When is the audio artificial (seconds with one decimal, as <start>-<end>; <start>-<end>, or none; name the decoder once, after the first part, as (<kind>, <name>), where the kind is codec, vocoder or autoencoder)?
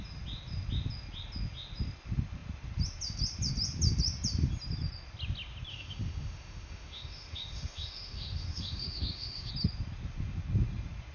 5.7-9.5 (autoencoder, DAC-VAE)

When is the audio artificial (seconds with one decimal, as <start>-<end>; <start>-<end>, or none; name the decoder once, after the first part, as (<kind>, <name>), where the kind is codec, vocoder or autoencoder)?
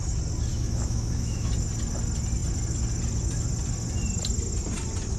0.5-1.5 (autoencoder, DAC-VAE)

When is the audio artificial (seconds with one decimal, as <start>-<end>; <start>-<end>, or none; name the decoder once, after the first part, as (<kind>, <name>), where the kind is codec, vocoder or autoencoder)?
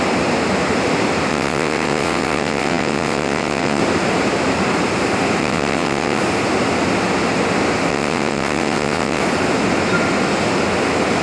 1.3-3.8 (vocoder, WaveNeXt); 5.4-6.2; 7.9-9.2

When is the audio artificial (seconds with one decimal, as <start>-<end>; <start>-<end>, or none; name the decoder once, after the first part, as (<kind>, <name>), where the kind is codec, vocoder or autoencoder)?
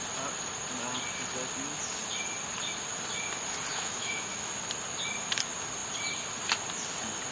3.7-4.5 (autoencoder, DAC-VAE)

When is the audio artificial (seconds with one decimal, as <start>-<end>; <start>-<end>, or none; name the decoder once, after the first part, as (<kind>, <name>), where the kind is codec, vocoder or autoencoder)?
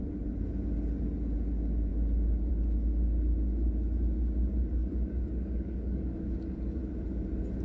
4.8-6.8 (codec, DAC)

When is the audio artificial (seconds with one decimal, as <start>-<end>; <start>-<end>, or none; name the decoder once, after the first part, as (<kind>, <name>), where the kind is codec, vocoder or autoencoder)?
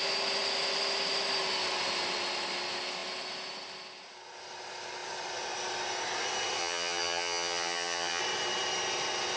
6.6-8.2 (vocoder, HiFi-GAN)